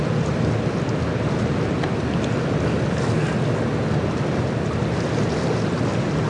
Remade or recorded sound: recorded